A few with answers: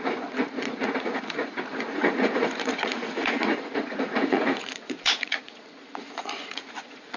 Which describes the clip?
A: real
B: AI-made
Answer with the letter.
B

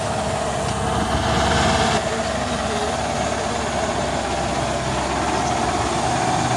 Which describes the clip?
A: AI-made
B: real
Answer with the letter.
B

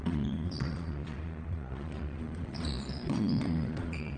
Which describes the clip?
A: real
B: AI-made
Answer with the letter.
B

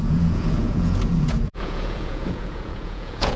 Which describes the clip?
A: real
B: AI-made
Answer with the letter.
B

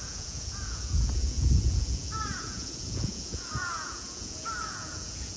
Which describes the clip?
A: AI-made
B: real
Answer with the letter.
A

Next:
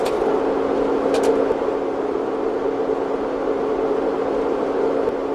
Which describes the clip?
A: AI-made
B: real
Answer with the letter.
B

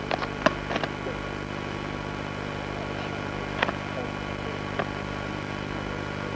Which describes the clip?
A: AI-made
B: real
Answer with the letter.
B